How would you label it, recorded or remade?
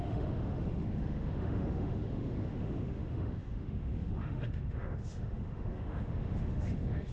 remade